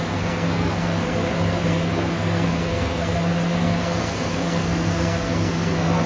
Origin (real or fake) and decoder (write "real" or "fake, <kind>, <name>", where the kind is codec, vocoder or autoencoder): fake, codec, SNAC